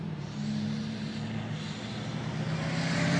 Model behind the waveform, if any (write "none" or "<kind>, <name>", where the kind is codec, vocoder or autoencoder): none